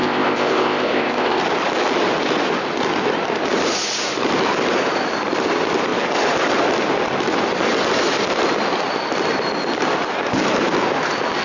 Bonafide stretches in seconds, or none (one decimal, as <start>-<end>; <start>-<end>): 1.4-11.4

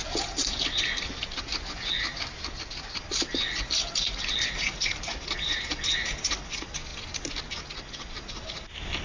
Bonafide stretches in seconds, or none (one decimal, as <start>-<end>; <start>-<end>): 0.0-9.0

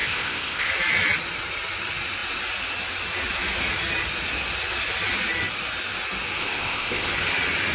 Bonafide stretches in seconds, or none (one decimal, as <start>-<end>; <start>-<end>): 0.7-6.4; 7.1-7.7

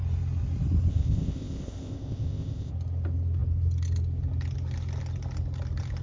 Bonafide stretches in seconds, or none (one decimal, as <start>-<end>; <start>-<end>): 0.0-0.9; 2.7-6.0